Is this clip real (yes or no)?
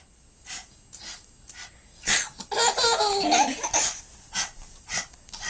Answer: yes